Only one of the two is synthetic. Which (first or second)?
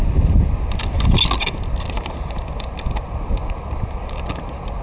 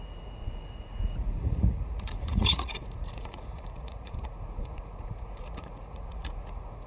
second